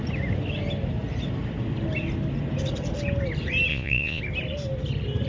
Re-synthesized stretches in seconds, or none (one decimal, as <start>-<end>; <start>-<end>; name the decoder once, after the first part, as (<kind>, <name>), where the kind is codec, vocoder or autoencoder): 3.7-4.2 (vocoder, Vocos)